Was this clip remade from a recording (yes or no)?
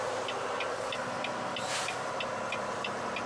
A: no